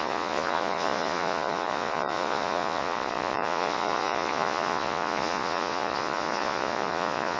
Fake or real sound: fake